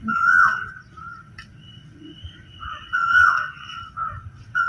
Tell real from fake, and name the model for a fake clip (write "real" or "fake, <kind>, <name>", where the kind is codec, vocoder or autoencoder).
fake, vocoder, WaveNeXt